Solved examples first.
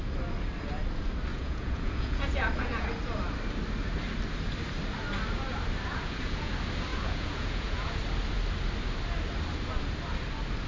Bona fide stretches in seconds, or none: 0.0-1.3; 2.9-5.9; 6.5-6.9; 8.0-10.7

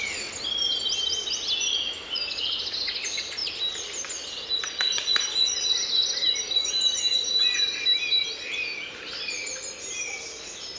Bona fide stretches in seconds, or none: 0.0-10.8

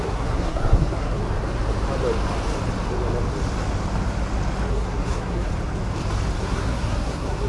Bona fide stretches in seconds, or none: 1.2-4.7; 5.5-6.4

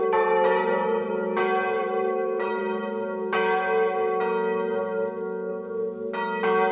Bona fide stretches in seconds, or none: 1.4-1.8; 2.6-6.7